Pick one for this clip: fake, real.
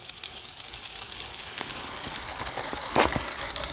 fake